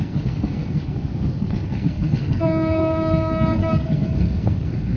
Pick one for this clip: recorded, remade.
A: remade